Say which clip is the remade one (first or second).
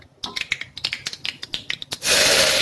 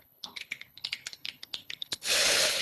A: second